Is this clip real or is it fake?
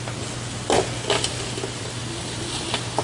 real